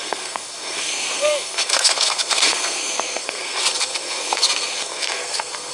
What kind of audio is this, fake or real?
fake